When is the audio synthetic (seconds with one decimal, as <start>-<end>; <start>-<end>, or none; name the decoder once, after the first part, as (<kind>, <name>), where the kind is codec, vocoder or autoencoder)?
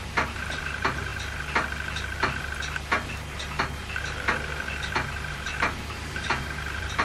0.0-1.1 (vocoder, BigVGAN v2); 5.3-7.0